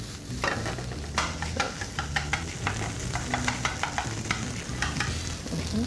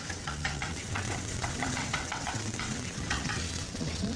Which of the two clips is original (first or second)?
first